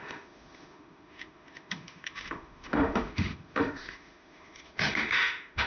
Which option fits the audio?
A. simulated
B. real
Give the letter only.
A